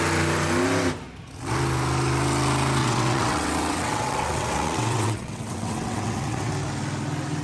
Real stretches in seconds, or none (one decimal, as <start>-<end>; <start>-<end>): 0.0-2.8; 6.5-7.4